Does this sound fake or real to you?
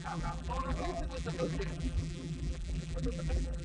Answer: fake